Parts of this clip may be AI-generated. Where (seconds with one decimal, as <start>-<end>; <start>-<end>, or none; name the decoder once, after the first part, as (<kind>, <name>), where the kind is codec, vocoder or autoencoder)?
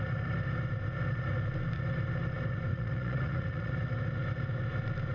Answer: 2.7-3.7 (vocoder, Vocos)